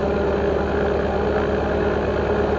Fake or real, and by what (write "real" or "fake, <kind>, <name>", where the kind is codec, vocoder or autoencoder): real